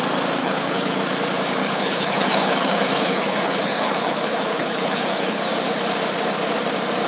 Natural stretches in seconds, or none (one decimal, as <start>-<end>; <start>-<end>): 0.0-0.4; 1.0-1.6; 5.4-7.1